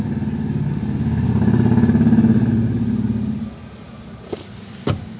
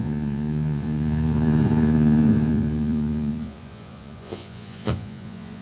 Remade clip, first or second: second